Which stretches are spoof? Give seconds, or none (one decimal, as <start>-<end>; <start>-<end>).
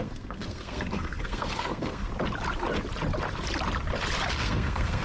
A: 0.0-2.1; 4.3-5.0